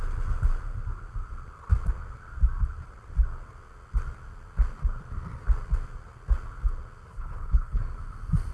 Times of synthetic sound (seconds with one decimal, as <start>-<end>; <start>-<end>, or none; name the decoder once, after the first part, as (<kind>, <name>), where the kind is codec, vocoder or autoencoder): 7.1-7.8 (codec, HILCodec)